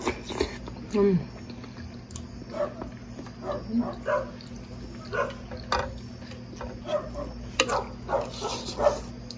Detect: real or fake real